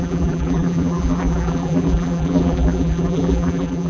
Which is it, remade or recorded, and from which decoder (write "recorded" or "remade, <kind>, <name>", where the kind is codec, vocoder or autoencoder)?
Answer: remade, vocoder, BigVGAN v2